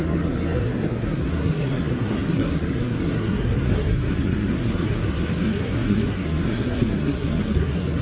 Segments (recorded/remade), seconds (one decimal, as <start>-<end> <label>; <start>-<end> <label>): 0.0-8.0 remade